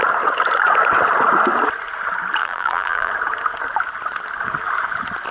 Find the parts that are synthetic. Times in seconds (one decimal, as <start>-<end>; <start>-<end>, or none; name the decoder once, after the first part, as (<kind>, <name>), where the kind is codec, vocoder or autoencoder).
2.4-3.1 (vocoder, BigVGAN v2)

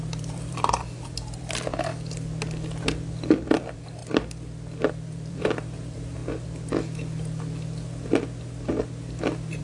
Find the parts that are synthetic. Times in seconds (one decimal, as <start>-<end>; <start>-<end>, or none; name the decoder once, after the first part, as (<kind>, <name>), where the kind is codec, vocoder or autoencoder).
0.0-1.9 (vocoder, BigVGAN v2); 3.1-4.0; 4.9-6.2

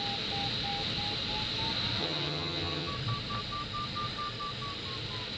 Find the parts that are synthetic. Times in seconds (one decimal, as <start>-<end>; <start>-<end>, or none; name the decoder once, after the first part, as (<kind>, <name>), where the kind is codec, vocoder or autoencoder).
2.0-2.9 (vocoder, HiFi-GAN)

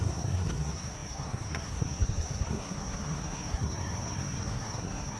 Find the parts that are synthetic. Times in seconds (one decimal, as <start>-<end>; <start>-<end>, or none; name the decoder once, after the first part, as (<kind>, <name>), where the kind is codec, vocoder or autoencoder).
0.0-5.2 (codec, SNAC)